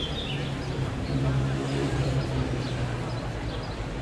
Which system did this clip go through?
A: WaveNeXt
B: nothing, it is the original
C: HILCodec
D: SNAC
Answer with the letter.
B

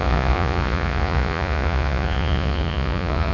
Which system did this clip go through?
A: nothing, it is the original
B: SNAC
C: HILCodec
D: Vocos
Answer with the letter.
D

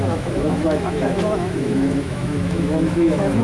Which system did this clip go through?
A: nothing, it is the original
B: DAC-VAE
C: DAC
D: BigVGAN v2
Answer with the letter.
B